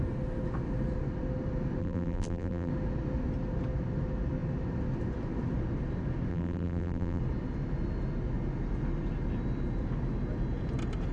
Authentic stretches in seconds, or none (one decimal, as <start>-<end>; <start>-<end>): 0.0-1.8; 2.7-6.3; 7.2-11.1

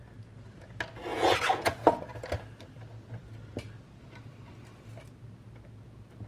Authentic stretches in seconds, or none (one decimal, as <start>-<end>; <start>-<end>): 0.0-1.1; 2.1-6.3

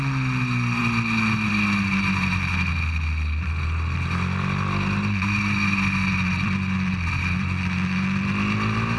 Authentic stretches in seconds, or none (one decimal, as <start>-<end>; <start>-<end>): 0.0-9.0

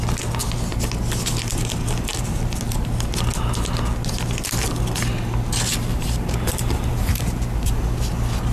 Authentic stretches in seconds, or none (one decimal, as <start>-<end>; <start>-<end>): 0.0-5.9; 7.8-8.5

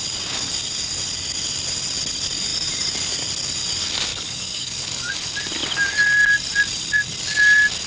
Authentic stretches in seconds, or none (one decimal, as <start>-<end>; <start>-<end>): 0.0-4.1; 5.1-7.9

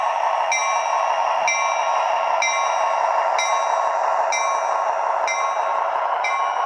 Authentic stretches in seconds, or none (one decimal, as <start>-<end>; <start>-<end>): 0.0-5.7; 6.3-6.7

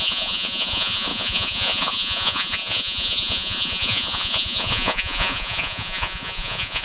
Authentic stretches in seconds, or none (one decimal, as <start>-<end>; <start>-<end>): none

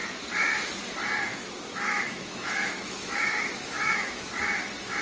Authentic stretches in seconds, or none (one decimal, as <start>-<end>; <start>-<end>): 0.0-1.3; 4.3-5.0